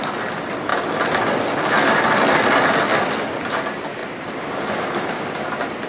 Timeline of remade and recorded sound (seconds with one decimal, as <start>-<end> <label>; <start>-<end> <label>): 0.0-4.0 recorded; 4.0-5.3 remade; 5.3-5.9 recorded